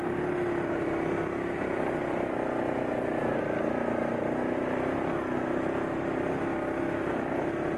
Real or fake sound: real